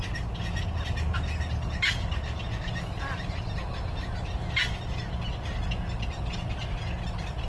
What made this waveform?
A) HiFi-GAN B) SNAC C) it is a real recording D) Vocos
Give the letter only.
C